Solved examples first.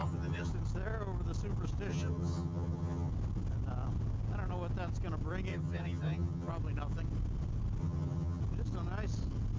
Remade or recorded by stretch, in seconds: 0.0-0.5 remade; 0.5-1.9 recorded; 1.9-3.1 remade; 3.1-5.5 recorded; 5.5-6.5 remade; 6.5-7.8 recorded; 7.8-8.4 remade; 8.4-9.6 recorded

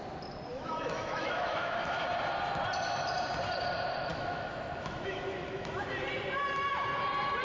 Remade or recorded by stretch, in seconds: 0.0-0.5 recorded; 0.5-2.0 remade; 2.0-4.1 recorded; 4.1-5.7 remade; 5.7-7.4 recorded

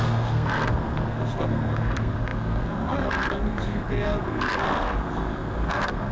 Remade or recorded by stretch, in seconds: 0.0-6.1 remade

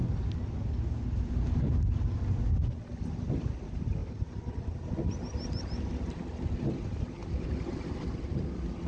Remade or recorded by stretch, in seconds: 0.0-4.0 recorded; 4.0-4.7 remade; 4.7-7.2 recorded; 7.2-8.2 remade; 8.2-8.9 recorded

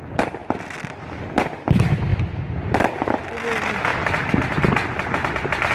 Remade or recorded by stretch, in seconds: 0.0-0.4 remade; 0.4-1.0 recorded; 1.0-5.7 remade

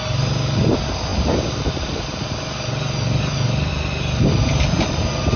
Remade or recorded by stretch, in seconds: 0.0-5.4 recorded